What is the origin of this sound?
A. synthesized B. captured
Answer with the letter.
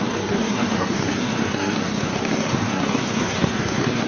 A